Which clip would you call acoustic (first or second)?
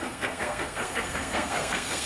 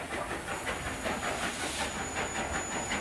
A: second